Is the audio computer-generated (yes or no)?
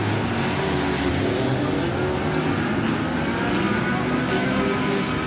no